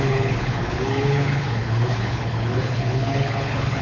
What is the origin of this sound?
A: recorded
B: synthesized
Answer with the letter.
B